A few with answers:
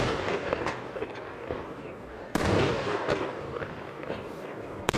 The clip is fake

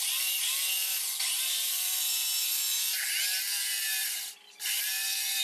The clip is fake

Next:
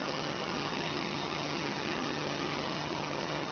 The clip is fake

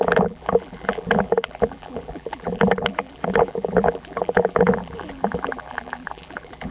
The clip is fake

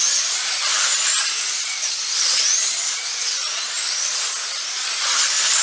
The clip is real